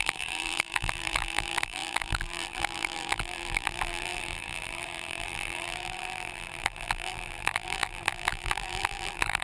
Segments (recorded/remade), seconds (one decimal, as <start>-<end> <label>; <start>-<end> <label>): 0.0-9.4 remade